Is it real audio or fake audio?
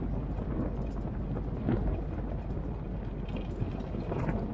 real